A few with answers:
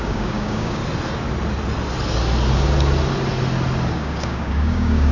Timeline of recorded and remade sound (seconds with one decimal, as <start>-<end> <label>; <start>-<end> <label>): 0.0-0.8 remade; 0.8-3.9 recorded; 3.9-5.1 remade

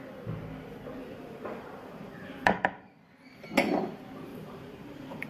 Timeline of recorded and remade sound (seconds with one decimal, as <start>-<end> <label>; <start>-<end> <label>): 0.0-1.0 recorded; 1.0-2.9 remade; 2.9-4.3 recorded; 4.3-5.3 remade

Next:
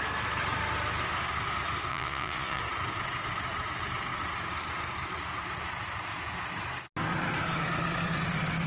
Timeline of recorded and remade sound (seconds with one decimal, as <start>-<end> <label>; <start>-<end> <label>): 0.0-1.9 recorded; 1.9-2.6 remade; 2.6-8.7 recorded

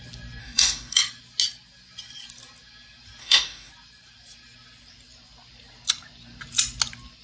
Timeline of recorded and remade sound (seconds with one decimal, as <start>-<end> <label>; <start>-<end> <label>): 0.0-0.4 recorded; 0.4-1.0 remade; 1.0-3.2 recorded; 3.2-3.7 remade; 3.7-7.2 recorded

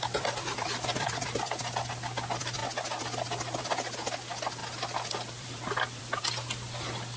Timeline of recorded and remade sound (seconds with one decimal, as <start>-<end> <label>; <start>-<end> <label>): 0.0-7.2 recorded

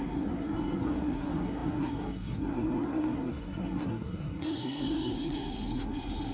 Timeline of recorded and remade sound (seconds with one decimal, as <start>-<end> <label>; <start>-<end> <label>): 0.0-6.3 remade

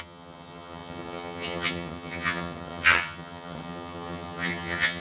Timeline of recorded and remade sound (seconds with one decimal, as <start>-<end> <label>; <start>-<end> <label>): 0.0-5.0 remade

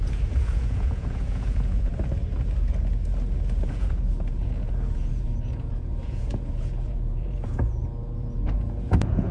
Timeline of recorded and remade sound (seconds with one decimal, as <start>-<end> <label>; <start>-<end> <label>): 0.0-1.9 remade; 1.9-3.7 recorded; 3.7-9.3 remade